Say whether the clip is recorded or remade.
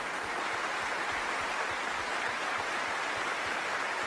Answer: recorded